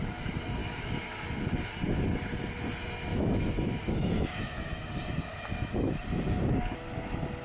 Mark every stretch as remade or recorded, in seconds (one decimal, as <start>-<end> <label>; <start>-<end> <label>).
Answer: 0.0-0.6 recorded; 0.6-1.3 remade; 1.3-3.1 recorded; 3.1-4.8 remade; 4.8-5.3 recorded; 5.3-6.0 remade; 6.0-7.4 recorded